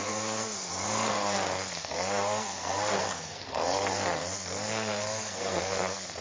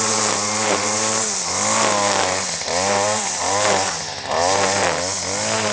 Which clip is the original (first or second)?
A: second